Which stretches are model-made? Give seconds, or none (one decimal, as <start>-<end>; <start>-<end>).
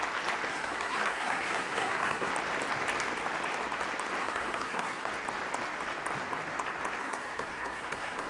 0.5-2.3; 4.2-5.1; 7.0-8.3